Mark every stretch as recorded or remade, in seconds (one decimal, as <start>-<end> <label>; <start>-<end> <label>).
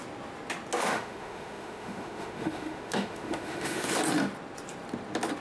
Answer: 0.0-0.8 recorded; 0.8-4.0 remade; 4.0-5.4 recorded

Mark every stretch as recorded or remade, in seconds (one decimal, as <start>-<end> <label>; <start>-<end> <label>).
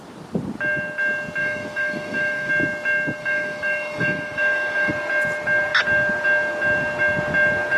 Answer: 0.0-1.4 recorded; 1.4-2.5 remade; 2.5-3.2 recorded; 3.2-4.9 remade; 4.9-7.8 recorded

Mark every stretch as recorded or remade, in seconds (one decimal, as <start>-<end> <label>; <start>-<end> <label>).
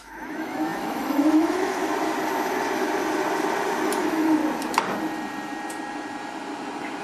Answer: 0.0-1.8 remade; 1.8-4.0 recorded; 4.0-4.4 remade; 4.4-7.0 recorded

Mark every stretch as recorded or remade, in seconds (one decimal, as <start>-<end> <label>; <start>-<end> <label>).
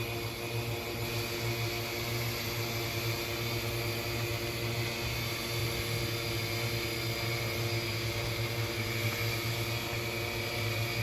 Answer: 0.0-11.0 recorded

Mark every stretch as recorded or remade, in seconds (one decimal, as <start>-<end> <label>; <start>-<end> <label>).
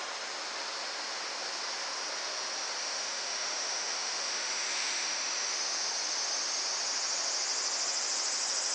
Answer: 0.0-2.8 recorded; 2.8-5.5 remade; 5.5-8.7 recorded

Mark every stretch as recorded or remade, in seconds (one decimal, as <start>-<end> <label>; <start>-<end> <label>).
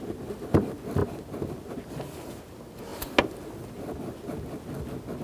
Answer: 0.0-5.2 recorded